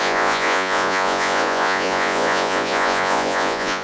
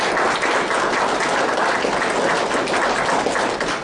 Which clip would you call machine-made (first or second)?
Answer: first